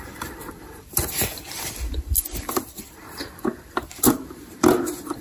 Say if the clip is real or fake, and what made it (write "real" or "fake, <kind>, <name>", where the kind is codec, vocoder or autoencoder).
fake, vocoder, BigVGAN v2